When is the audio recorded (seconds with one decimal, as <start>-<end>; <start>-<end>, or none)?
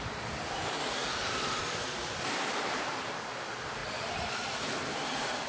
0.0-1.1; 3.0-3.8